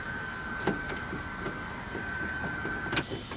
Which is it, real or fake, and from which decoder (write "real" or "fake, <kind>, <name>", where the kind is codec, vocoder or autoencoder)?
real